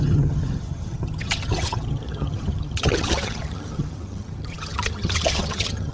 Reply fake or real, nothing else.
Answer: fake